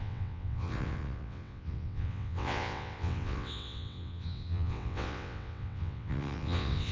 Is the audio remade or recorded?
remade